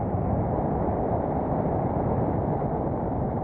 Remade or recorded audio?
recorded